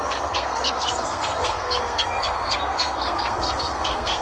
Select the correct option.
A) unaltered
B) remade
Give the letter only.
B